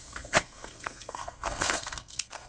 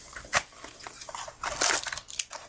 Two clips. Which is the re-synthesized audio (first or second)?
first